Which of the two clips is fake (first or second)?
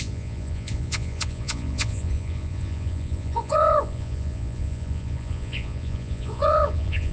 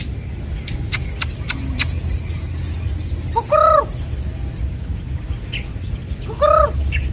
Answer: first